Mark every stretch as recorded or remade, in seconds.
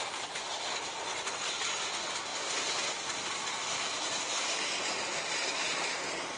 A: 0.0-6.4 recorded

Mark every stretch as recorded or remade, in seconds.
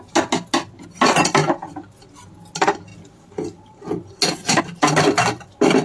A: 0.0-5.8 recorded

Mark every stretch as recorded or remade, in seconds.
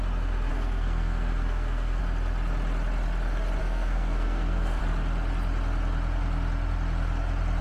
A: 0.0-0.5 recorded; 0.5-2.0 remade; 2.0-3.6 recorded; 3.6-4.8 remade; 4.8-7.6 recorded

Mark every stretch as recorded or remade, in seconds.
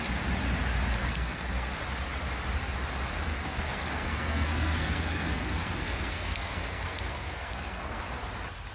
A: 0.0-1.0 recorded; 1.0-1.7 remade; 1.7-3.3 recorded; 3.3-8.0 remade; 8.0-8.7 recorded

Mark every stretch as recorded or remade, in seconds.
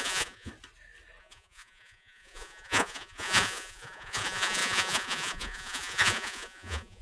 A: 0.0-0.5 remade; 0.5-1.2 recorded; 1.2-7.0 remade